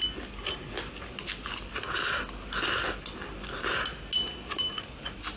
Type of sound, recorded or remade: recorded